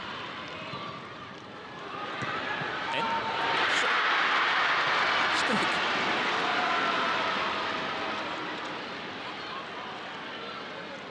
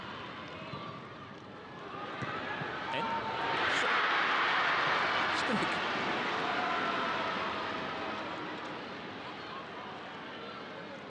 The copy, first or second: first